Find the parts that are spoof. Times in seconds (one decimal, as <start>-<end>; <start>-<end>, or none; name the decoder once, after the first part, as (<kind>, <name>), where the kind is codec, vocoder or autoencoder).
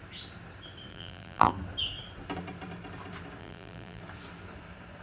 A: 0.9-1.5 (vocoder, BigVGAN v2); 3.4-4.0